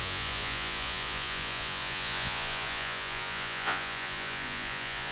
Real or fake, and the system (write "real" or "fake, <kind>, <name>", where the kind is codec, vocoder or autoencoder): fake, vocoder, Vocos